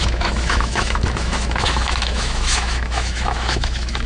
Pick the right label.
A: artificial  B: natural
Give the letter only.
A